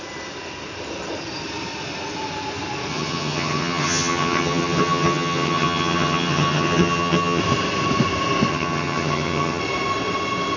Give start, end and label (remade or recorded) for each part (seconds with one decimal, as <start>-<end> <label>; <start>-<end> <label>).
0.0-2.9 recorded; 2.9-7.4 remade; 7.4-8.5 recorded; 8.5-9.6 remade; 9.6-10.6 recorded